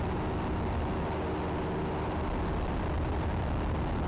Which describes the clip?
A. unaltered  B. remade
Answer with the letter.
A